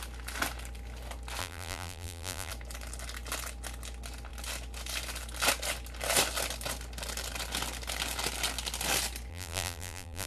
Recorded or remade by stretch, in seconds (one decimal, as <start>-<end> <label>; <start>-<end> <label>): 0.0-1.4 recorded; 1.4-2.5 remade; 2.5-9.3 recorded; 9.3-10.3 remade